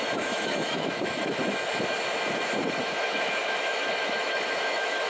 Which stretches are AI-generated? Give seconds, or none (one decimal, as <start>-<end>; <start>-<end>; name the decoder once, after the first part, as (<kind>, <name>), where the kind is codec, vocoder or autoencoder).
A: 0.0-1.4 (autoencoder, DAC-VAE); 2.8-5.1